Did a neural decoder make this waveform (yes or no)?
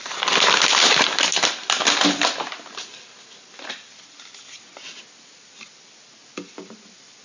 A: no